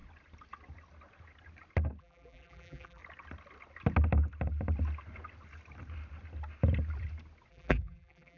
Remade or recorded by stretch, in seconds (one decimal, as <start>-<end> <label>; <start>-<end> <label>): 0.0-2.0 recorded; 2.0-3.0 remade; 3.0-7.5 recorded; 7.5-8.4 remade